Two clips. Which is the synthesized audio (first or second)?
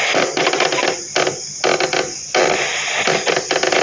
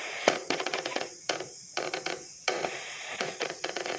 second